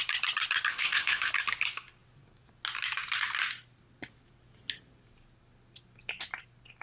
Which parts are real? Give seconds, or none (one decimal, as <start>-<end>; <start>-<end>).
0.0-0.7; 1.3-6.8